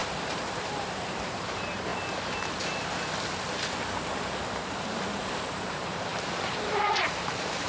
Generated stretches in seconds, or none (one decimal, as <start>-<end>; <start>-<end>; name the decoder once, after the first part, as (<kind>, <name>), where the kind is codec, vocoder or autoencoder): 0.0-1.9 (vocoder, BigVGAN v2); 5.2-7.7